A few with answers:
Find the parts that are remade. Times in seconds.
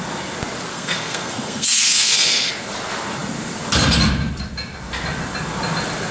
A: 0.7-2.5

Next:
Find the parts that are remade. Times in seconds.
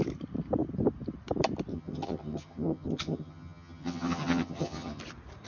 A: 1.7-5.0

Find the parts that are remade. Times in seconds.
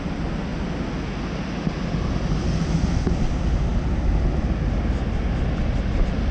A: none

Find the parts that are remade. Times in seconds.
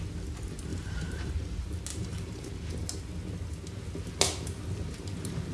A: 0.7-1.3; 1.9-2.5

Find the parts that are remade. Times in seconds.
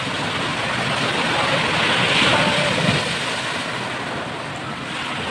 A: none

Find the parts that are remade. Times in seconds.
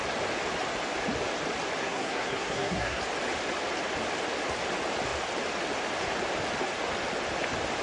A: 1.8-3.0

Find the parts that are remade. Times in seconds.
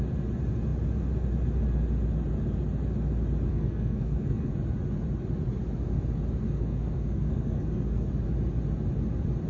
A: 3.5-4.5; 6.4-8.1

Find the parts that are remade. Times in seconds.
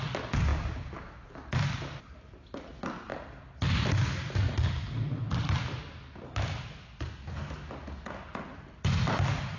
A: 0.5-2.0